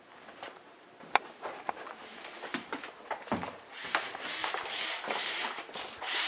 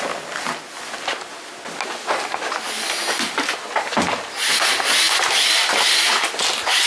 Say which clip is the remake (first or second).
first